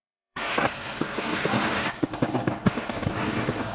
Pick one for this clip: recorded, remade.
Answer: remade